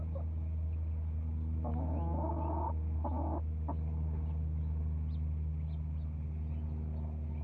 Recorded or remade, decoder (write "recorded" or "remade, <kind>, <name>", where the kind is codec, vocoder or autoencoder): recorded